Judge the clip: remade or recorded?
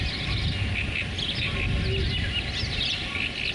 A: recorded